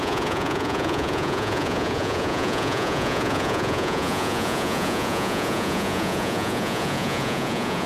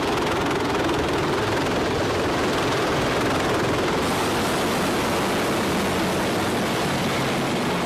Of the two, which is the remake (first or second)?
first